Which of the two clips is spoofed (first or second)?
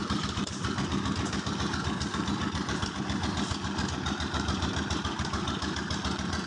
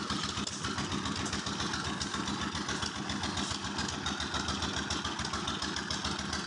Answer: first